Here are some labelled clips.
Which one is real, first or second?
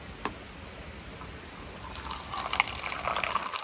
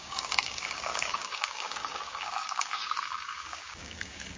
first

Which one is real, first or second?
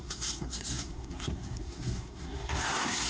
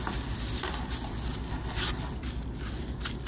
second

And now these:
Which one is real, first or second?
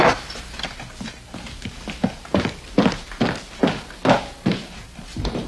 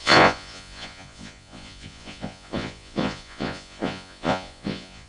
first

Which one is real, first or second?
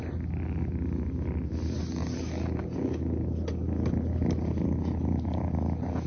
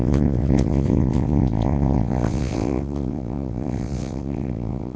first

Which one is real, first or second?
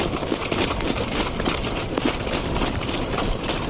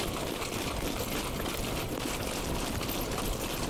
second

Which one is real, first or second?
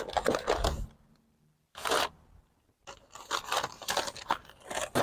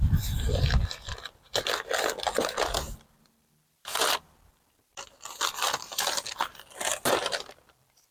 first